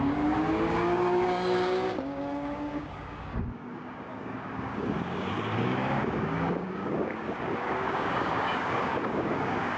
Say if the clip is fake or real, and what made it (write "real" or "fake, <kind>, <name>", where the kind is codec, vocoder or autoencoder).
fake, codec, DAC